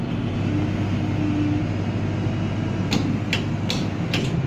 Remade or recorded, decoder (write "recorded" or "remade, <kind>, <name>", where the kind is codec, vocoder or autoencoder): recorded